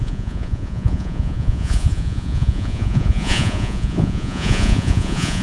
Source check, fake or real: fake